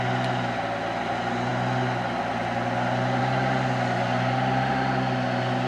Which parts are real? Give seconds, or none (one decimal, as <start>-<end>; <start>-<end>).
0.0-5.7